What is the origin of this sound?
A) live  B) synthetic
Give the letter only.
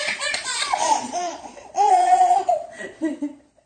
B